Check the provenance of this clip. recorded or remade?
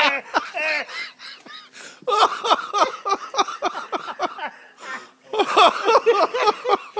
recorded